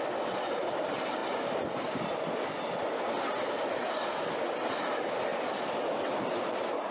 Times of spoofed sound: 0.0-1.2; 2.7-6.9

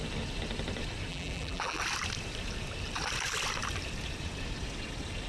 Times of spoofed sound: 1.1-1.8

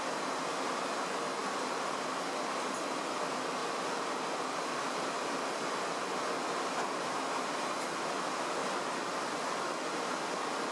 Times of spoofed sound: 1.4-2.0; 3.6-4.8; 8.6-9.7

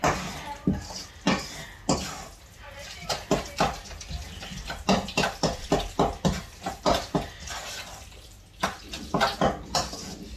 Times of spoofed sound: none

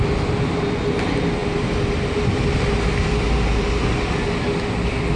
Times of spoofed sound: none

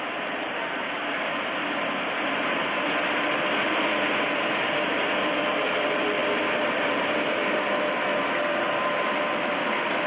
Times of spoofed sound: 0.0-10.1

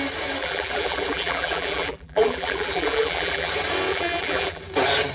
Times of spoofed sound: 0.4-3.5; 3.9-4.6

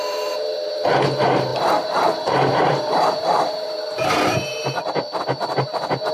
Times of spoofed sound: 0.0-6.1